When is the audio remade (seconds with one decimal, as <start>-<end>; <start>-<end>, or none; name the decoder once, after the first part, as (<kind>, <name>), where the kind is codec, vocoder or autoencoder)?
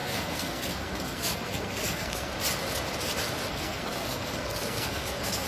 0.0-2.3 (codec, SNAC); 3.5-5.5